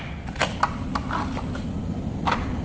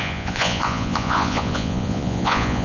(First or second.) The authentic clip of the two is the first